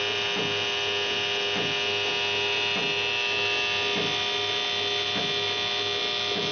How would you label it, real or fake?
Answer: real